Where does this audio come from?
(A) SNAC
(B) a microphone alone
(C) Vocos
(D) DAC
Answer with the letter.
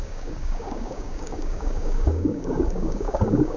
D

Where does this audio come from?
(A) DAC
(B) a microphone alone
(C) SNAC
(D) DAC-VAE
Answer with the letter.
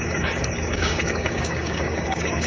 A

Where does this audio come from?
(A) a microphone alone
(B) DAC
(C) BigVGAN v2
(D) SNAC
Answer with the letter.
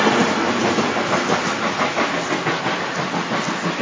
A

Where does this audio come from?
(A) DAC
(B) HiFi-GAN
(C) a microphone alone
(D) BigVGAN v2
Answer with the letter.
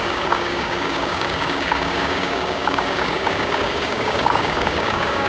A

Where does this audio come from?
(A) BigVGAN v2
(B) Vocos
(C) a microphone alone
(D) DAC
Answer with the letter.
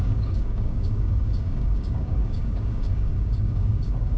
D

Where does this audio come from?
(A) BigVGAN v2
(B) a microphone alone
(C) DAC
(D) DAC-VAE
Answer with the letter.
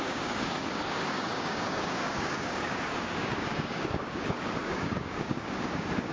C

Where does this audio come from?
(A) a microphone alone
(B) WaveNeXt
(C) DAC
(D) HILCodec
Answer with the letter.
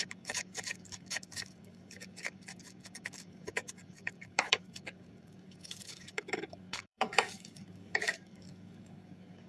C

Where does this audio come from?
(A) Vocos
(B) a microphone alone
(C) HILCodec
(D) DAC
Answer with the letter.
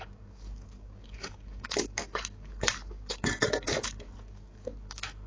D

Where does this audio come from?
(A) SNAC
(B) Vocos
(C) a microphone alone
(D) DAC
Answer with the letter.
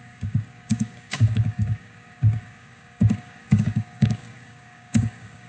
D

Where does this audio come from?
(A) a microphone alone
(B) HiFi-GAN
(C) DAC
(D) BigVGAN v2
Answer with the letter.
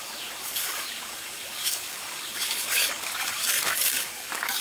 C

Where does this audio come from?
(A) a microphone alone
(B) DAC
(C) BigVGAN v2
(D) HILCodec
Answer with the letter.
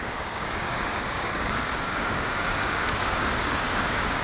B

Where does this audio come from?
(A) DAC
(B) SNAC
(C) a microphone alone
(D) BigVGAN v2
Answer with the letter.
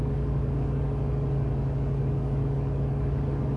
A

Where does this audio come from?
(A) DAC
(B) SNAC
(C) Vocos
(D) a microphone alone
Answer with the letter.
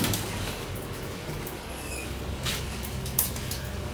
A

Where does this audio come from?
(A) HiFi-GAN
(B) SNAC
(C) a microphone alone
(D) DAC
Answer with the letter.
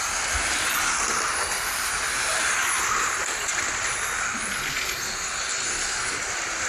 C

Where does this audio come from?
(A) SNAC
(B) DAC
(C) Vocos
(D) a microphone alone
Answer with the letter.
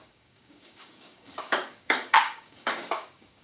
B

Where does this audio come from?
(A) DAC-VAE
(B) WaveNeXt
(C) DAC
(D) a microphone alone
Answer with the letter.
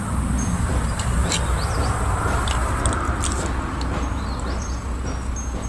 D